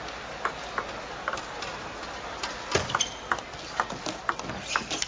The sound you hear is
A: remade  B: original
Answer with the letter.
B